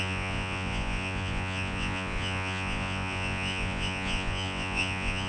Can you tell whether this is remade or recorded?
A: remade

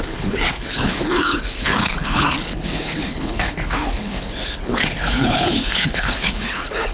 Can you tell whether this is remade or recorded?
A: remade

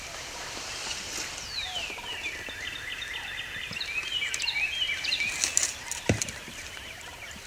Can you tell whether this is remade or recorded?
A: recorded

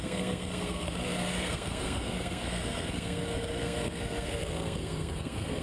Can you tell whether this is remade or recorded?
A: remade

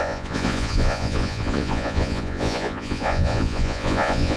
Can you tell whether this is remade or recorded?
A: remade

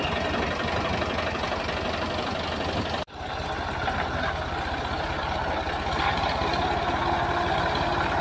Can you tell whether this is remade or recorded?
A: recorded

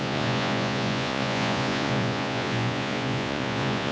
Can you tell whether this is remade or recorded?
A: remade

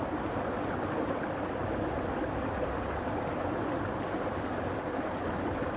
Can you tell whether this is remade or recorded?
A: recorded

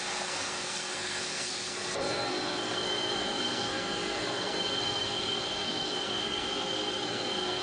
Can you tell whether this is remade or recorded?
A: remade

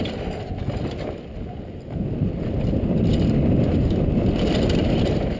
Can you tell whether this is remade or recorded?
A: recorded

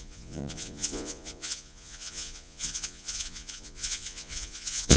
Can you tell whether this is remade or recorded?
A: remade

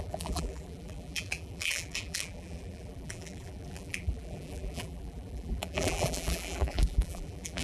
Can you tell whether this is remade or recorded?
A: remade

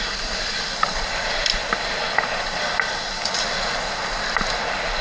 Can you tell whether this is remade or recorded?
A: recorded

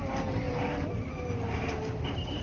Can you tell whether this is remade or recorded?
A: recorded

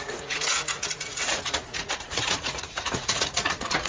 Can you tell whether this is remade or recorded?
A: remade